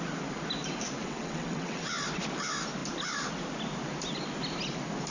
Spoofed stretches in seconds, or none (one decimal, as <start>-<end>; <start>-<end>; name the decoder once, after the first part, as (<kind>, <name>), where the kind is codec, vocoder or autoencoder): 1.0-1.9 (vocoder, WaveNeXt)

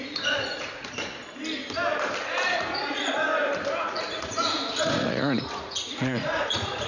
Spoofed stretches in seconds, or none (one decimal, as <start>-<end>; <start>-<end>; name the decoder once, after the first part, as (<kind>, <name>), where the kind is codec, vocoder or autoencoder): 0.0-1.2 (vocoder, Vocos); 2.2-3.3; 3.8-6.9

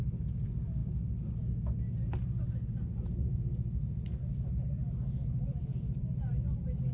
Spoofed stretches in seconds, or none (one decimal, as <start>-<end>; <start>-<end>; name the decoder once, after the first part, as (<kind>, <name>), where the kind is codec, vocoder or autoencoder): none